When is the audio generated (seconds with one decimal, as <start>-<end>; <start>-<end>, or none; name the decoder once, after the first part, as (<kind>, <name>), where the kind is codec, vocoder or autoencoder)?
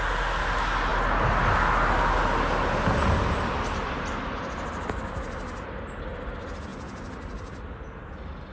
none